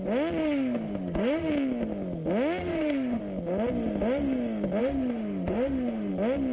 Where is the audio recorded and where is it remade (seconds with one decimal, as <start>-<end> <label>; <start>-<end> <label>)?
0.0-0.4 recorded; 0.4-1.5 remade; 1.5-2.6 recorded; 2.6-3.2 remade; 3.2-4.8 recorded; 4.8-6.1 remade; 6.1-6.5 recorded

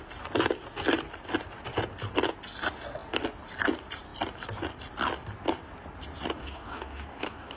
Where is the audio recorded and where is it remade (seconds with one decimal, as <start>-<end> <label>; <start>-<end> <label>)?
0.0-6.4 recorded; 6.4-7.6 remade

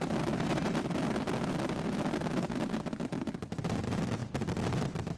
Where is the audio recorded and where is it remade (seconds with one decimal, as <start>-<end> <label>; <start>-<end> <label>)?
0.0-5.2 recorded

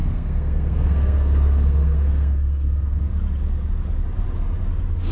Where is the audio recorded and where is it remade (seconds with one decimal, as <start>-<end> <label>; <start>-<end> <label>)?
0.0-3.1 remade; 3.1-5.1 recorded